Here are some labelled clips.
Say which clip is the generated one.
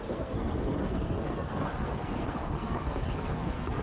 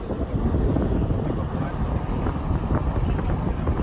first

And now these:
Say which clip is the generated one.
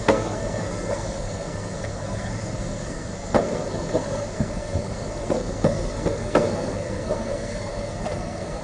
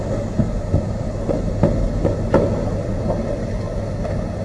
first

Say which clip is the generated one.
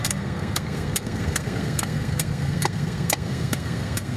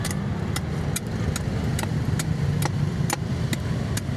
first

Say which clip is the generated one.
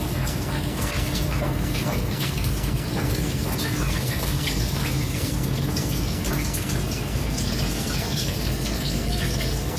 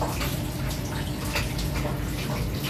first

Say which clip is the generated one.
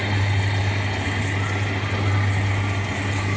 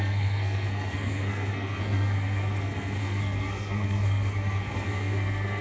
second